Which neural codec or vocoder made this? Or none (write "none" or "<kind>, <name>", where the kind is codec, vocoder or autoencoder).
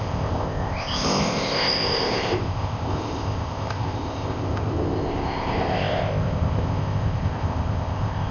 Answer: codec, ZipCodec